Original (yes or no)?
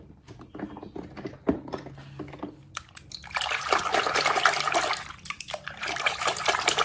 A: yes